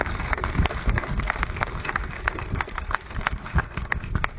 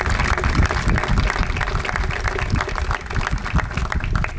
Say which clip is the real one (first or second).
second